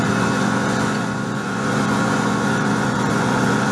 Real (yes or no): no